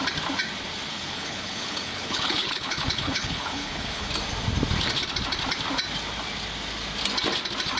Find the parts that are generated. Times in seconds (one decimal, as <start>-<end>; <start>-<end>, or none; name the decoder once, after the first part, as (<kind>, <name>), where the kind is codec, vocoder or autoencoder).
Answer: 0.9-4.1 (codec, HILCodec)